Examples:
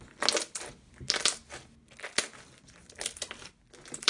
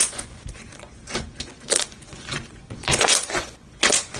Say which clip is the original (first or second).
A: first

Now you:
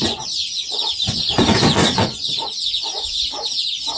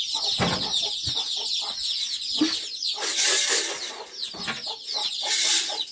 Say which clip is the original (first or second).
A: second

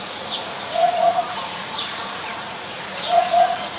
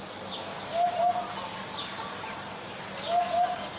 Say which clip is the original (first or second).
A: second